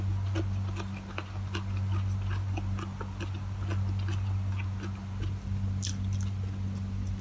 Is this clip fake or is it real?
real